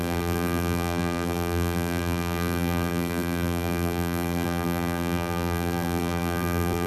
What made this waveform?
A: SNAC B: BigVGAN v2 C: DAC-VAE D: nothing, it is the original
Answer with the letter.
B